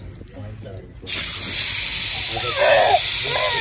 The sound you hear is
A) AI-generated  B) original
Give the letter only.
B